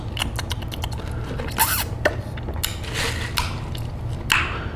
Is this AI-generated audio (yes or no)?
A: no